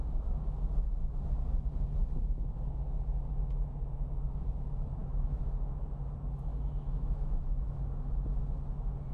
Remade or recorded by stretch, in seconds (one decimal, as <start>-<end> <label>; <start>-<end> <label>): 0.0-5.0 recorded; 5.0-5.8 remade; 5.8-6.5 recorded; 6.5-8.1 remade; 8.1-9.1 recorded